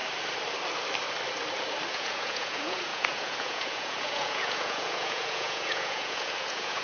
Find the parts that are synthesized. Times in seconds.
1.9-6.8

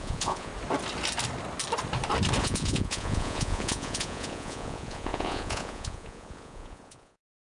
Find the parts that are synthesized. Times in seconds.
0.0-0.5; 2.4-7.6